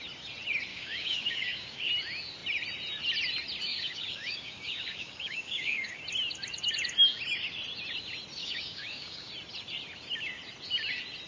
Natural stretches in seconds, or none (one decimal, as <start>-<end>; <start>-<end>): 0.0-0.7; 1.9-3.7; 6.0-8.4; 9.3-11.3

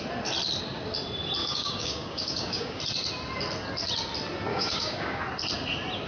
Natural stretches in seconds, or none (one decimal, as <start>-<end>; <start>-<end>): 0.0-1.4; 2.8-4.5; 5.2-6.1

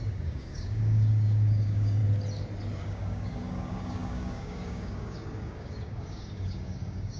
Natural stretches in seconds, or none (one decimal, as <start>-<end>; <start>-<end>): 2.0-2.8

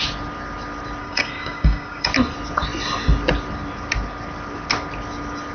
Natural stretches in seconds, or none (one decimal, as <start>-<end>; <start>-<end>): 0.0-1.0; 2.1-5.5

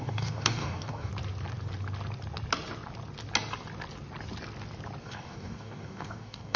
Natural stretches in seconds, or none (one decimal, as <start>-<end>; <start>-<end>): 1.1-5.0

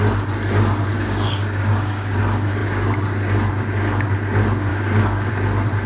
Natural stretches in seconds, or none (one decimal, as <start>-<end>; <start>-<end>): 0.0-0.9; 2.2-4.7; 5.3-5.9

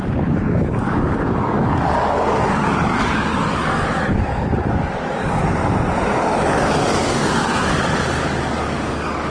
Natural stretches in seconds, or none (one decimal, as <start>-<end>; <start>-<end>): 5.4-6.6

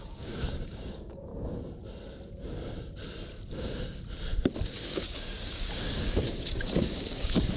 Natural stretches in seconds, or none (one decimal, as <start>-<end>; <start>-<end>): 1.3-4.8